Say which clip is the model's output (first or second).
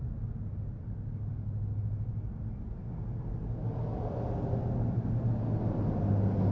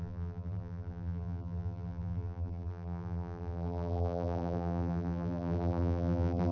second